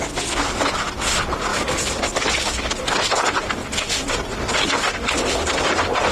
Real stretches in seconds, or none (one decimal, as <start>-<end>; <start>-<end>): 0.0-6.1